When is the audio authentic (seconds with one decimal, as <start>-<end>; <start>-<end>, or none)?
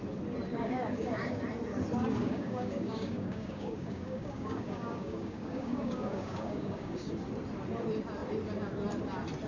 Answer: 0.0-0.5; 1.4-2.2; 7.1-9.5